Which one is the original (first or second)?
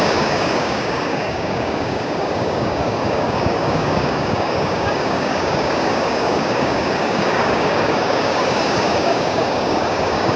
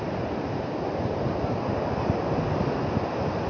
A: second